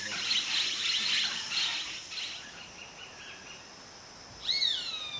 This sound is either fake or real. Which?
real